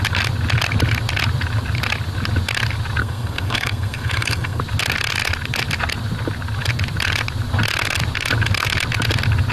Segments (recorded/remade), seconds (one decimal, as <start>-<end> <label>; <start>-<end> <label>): 0.0-3.0 recorded; 3.0-4.6 remade; 4.6-9.5 recorded